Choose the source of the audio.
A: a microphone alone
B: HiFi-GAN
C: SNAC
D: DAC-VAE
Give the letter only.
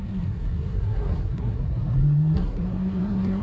C